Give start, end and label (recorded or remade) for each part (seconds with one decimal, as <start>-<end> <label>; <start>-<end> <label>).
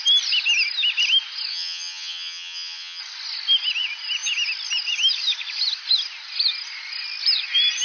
0.0-1.5 recorded; 1.5-3.0 remade; 3.0-7.8 recorded